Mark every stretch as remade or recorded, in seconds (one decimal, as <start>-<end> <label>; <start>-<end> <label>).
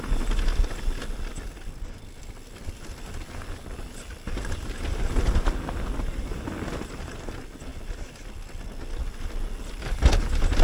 0.0-10.6 recorded